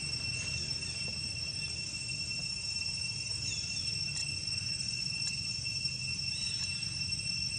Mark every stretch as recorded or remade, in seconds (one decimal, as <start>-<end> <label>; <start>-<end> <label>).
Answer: 0.0-4.2 recorded; 4.2-5.5 remade; 5.5-7.6 recorded